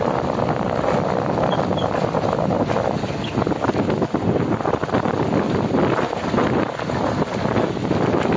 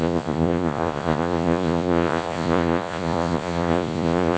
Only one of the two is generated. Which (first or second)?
second